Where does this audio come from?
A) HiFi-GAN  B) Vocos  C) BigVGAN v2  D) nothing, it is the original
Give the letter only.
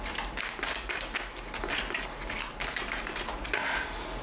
D